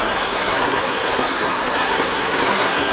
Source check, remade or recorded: remade